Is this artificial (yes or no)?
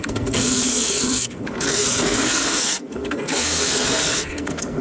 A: yes